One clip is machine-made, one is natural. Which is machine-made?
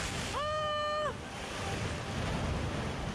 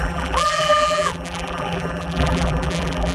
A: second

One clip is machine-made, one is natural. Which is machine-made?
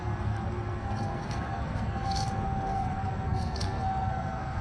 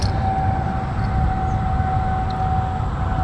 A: first